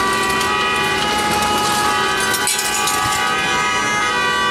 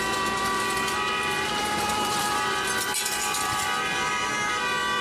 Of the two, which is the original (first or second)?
first